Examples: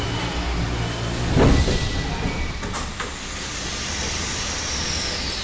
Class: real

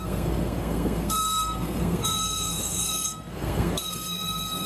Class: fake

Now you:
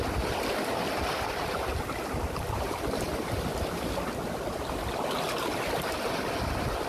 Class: real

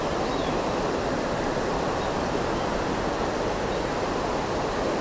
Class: real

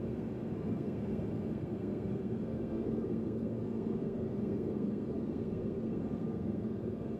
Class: fake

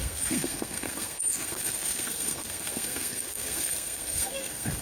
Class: fake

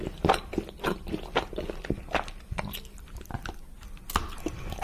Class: real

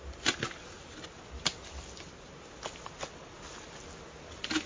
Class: real